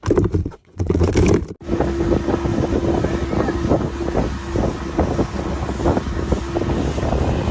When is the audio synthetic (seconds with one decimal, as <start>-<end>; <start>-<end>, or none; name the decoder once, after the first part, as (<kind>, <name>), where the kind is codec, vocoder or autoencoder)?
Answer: 0.4-1.1 (vocoder, WaveNeXt)